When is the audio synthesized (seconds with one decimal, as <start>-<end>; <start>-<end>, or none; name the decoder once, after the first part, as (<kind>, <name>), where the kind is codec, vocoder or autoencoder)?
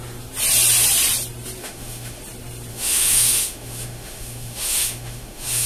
1.6-2.2 (autoencoder, DAC-VAE); 2.7-5.7